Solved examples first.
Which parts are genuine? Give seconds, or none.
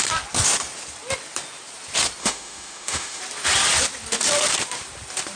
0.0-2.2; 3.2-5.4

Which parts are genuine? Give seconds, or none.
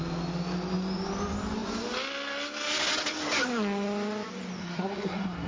0.0-4.6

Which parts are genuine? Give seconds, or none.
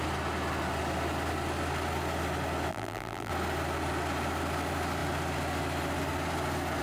0.0-2.7; 3.3-6.8